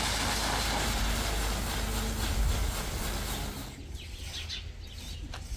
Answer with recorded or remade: recorded